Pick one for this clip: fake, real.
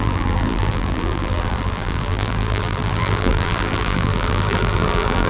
fake